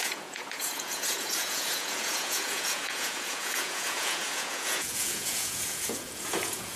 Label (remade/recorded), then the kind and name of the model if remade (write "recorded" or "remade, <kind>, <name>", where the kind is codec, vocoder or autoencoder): remade, vocoder, Vocos